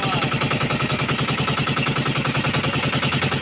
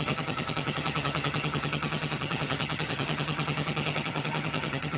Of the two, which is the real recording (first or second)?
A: first